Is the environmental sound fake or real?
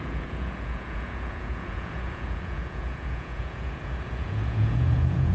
fake